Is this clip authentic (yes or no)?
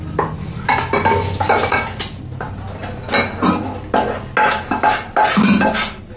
yes